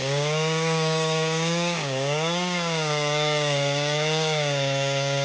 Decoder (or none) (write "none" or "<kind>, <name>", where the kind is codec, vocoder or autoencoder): codec, DAC